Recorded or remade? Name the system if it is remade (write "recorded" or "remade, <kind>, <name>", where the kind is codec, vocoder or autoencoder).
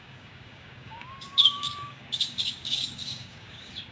remade, codec, DAC